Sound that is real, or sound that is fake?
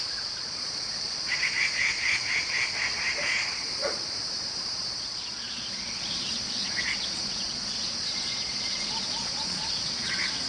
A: fake